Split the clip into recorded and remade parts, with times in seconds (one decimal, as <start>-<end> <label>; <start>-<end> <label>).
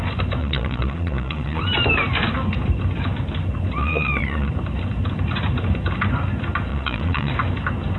0.0-0.4 recorded; 0.4-1.6 remade; 1.6-3.8 recorded; 3.8-4.5 remade; 4.5-6.7 recorded; 6.7-7.3 remade; 7.3-8.0 recorded